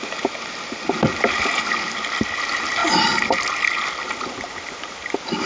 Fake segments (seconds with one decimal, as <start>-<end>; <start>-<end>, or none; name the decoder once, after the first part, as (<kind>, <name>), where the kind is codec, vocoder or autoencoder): none

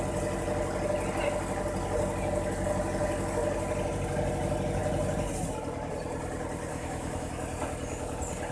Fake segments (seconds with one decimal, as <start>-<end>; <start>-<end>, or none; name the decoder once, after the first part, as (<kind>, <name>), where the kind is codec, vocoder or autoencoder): 6.7-7.3 (autoencoder, DAC-VAE)

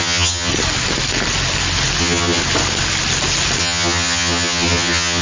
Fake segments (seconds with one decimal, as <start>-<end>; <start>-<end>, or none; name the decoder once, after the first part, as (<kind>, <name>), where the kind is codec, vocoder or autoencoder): 0.0-0.5 (vocoder, HiFi-GAN); 2.0-2.4; 3.6-5.2

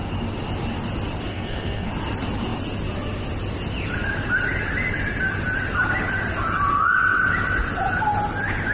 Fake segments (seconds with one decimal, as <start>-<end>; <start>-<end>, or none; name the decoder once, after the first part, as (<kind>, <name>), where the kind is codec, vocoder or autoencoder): 1.3-1.9 (codec, SNAC)